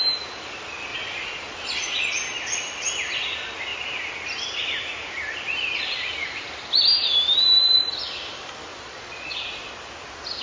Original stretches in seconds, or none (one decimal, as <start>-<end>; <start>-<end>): 0.0-0.9; 2.0-8.7; 9.7-10.4